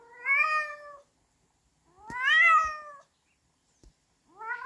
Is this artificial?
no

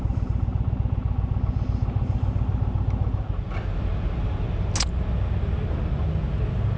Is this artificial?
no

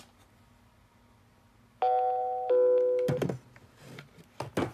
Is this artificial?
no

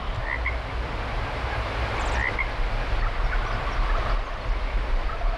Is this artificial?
no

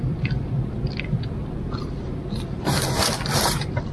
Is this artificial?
yes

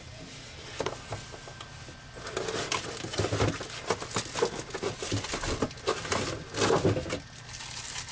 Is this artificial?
no